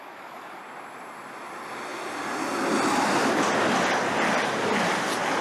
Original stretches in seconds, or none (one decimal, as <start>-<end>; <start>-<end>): 0.6-5.4